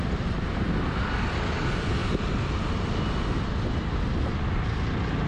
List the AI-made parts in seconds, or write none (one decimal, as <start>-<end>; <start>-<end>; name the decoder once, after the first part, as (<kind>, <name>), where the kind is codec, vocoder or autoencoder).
0.0-2.0 (vocoder, BigVGAN v2); 4.4-5.3